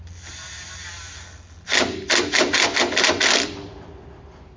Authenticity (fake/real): real